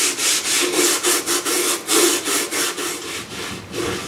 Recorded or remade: recorded